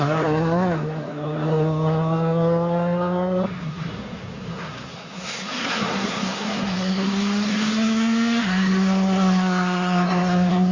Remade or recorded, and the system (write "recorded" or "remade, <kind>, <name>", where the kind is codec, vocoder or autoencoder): remade, codec, SNAC